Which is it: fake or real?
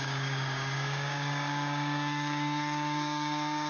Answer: fake